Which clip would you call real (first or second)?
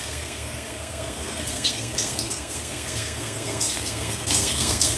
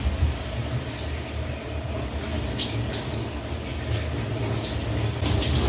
second